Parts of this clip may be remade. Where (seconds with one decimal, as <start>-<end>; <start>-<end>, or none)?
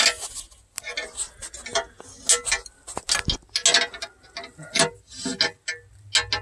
none